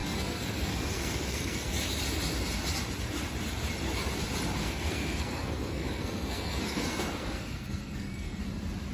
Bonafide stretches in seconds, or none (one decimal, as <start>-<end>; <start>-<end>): 1.7-4.6; 8.4-8.9